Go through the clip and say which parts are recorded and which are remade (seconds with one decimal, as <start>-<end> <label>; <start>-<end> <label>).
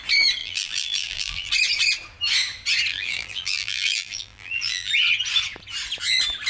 0.0-0.4 recorded; 0.4-1.5 remade; 1.5-2.9 recorded; 2.9-4.9 remade; 4.9-6.5 recorded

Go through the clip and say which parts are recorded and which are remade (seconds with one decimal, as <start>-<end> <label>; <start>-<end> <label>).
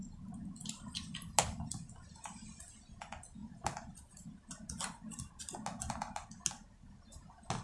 0.0-7.6 recorded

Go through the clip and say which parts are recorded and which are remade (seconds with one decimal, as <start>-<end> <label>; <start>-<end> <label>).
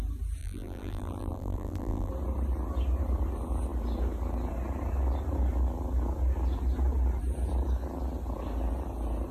0.0-0.4 recorded; 0.4-2.1 remade; 2.1-9.3 recorded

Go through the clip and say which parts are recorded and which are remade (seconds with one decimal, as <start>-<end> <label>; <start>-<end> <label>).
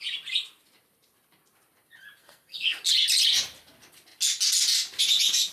0.0-2.2 recorded; 2.2-2.8 remade; 2.8-5.5 recorded